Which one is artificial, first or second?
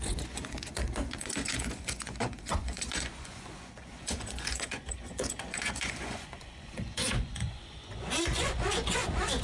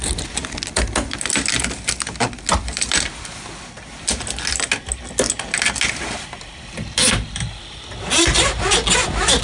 first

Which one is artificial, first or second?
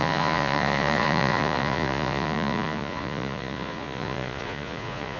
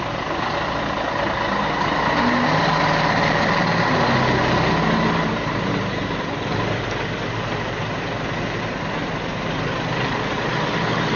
first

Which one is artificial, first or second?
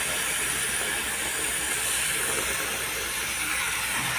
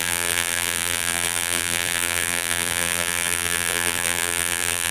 second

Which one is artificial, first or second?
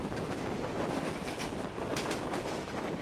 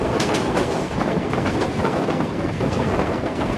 second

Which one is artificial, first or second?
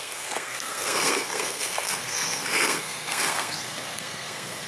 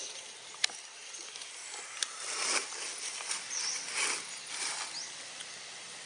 first